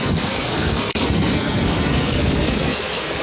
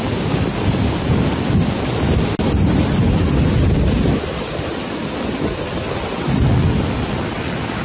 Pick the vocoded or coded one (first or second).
first